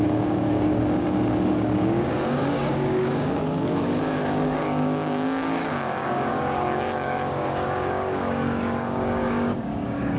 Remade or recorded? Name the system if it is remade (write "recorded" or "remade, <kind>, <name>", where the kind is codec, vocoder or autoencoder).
remade, codec, DAC